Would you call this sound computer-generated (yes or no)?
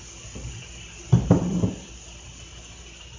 no